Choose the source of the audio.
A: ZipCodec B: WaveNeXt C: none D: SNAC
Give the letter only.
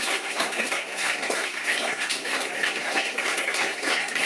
D